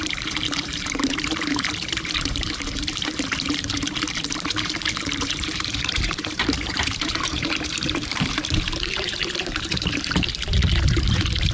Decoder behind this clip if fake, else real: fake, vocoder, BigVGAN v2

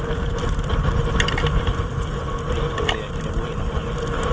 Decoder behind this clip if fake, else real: real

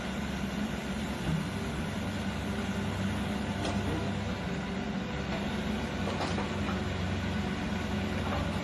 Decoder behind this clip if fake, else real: real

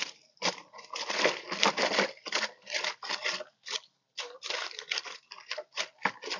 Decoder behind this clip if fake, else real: fake, vocoder, BigVGAN v2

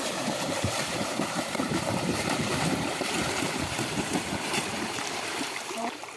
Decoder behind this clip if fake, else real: fake, vocoder, BigVGAN v2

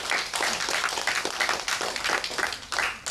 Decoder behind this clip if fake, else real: real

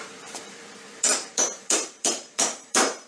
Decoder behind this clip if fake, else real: fake, vocoder, BigVGAN v2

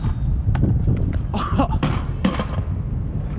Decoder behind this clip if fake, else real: real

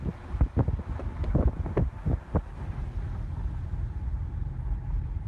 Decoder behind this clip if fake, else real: real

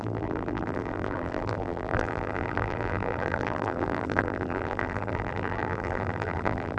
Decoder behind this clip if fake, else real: fake, vocoder, BigVGAN v2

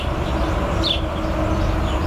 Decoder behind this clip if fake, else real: real